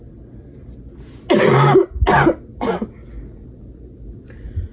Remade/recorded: recorded